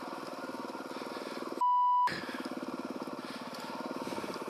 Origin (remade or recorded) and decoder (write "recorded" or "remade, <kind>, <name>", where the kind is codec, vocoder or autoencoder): recorded